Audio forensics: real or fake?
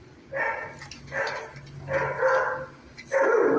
real